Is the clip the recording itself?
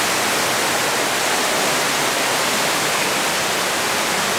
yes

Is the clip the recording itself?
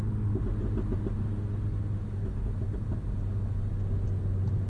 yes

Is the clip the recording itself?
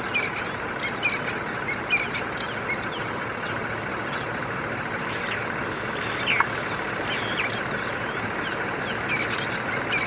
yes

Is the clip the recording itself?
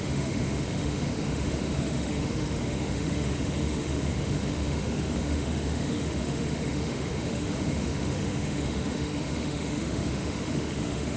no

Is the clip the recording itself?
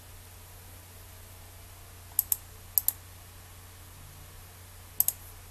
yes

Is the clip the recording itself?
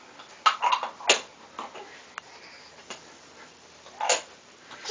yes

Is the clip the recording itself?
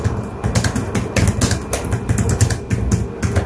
yes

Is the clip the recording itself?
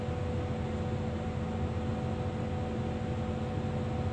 yes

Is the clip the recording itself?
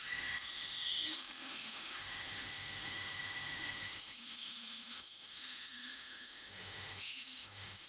no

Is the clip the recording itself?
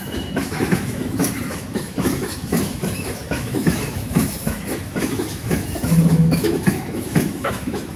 no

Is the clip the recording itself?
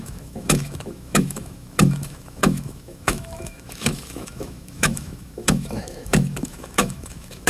no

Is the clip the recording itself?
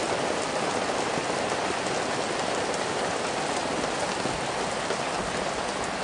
yes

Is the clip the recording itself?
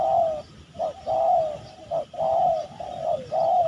yes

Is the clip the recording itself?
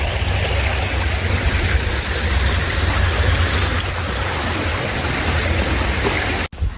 yes